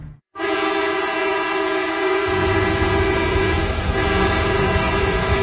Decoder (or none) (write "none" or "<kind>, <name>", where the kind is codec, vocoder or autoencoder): vocoder, Vocos